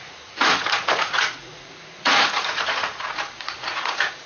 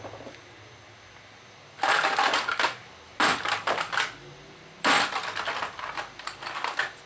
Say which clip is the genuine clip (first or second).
second